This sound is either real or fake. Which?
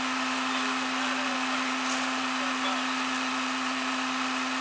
fake